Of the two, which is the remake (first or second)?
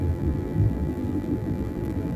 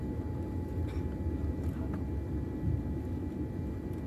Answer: first